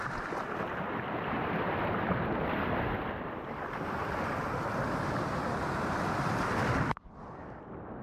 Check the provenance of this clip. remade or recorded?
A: recorded